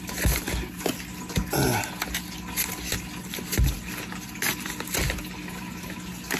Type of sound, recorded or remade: recorded